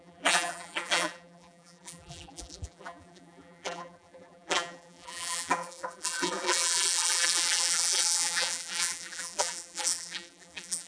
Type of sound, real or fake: fake